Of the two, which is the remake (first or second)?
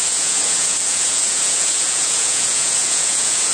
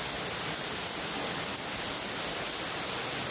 first